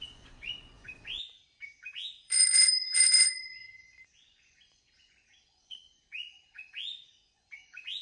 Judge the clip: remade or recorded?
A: remade